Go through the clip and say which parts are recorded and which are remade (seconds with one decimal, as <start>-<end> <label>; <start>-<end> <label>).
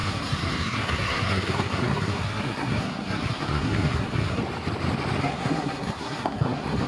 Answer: 0.0-4.4 remade; 4.4-5.2 recorded; 5.2-6.9 remade